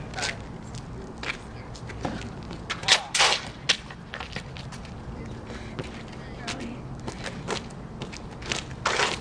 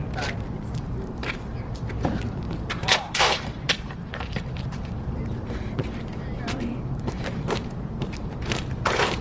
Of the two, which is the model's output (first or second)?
second